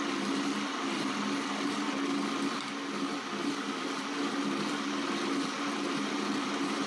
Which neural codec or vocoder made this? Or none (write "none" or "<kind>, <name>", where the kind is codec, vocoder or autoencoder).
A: none